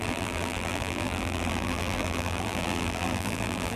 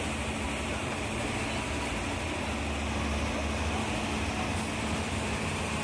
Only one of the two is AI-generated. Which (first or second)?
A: first